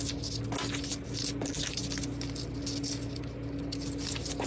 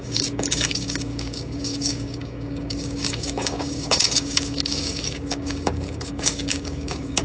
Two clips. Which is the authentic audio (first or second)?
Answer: first